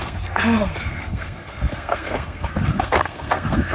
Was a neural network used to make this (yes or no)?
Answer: yes